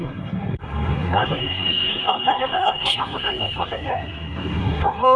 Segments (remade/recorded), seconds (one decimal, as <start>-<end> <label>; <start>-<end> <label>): 0.0-5.2 remade